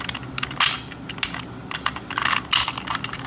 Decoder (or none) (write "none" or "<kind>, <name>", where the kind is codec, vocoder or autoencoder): none